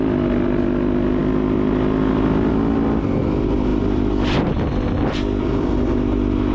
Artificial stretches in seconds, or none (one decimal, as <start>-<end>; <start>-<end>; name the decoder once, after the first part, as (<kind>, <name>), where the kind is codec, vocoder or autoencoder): none

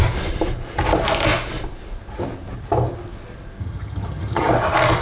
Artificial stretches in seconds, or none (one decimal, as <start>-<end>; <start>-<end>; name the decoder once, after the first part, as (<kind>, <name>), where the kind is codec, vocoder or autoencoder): 3.6-4.5 (vocoder, HiFi-GAN)

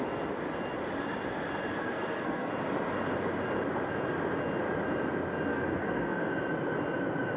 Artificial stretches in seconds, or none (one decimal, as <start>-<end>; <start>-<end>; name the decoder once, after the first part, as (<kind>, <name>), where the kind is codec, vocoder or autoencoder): 1.8-2.5 (codec, SNAC); 5.5-6.3

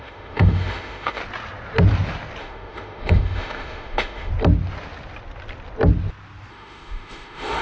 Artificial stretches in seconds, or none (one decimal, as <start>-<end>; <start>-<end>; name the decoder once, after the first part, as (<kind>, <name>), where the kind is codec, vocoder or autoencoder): 0.0-1.2 (autoencoder, DAC-VAE); 2.4-4.3; 6.5-7.6

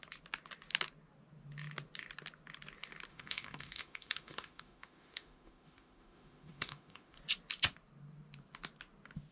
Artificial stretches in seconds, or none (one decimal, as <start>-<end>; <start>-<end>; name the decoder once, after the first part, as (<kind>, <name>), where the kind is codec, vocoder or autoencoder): 3.1-7.2 (autoencoder, DAC-VAE)

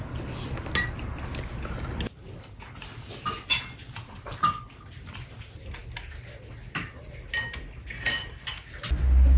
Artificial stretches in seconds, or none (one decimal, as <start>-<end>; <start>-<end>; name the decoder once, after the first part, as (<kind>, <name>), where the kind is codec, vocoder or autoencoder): none

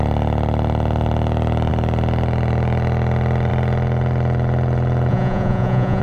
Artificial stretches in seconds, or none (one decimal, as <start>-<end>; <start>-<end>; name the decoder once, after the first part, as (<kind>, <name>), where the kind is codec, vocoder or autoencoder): 5.1-6.0 (vocoder, Vocos)